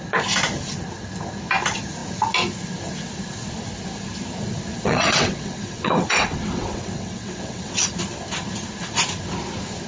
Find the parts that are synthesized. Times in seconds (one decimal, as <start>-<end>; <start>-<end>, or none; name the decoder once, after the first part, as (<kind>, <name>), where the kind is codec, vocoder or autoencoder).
4.7-7.9 (vocoder, WaveNeXt)